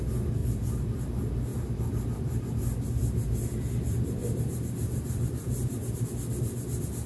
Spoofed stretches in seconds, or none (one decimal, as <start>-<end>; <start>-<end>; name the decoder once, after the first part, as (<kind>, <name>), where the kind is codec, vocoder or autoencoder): 0.4-1.0 (vocoder, BigVGAN v2); 4.2-6.0